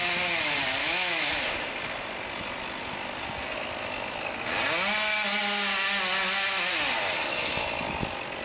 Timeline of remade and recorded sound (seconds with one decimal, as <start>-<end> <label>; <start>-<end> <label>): 0.0-0.8 recorded; 0.8-1.3 remade; 1.3-8.4 recorded